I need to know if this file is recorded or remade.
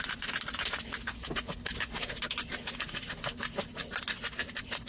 recorded